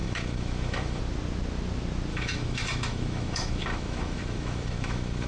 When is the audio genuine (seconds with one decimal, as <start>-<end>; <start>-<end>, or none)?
1.0-2.1